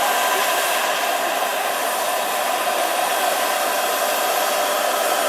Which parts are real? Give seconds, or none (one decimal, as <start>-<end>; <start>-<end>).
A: 0.0-1.5; 4.2-5.3